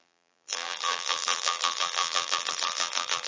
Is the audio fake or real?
fake